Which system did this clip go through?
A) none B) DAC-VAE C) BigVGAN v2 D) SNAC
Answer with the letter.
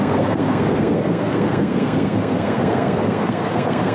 D